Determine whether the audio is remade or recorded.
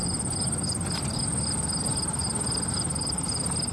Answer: recorded